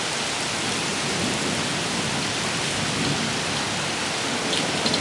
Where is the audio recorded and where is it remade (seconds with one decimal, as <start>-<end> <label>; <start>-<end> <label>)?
0.0-5.0 recorded